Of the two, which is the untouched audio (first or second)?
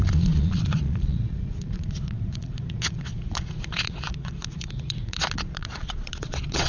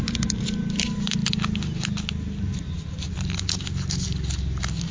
second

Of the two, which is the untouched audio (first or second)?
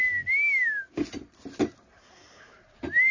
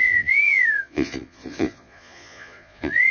first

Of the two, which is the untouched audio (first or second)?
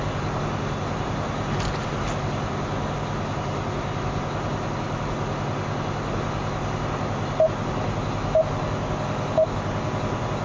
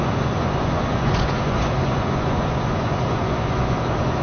first